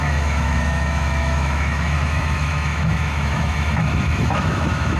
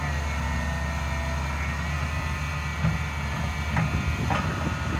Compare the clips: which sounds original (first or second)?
second